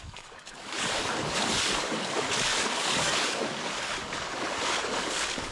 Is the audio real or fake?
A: fake